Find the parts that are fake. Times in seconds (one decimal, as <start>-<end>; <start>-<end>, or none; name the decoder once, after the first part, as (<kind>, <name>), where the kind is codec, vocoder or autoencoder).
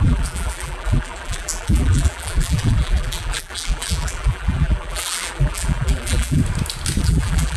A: 0.0-6.4 (vocoder, BigVGAN v2); 7.0-7.6